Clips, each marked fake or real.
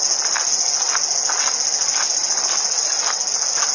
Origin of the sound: real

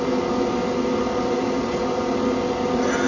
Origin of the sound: real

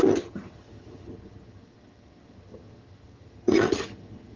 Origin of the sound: fake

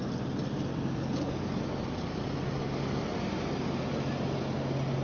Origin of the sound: real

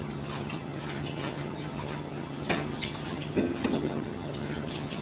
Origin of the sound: fake